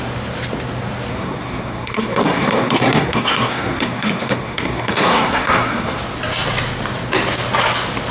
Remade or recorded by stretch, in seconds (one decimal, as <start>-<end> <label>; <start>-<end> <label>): 0.0-1.1 recorded; 1.1-6.0 remade; 6.0-8.1 recorded